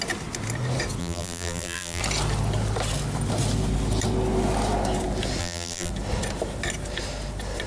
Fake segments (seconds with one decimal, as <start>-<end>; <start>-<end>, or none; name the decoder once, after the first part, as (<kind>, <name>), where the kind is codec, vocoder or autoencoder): 1.0-2.0 (vocoder, BigVGAN v2); 5.4-5.9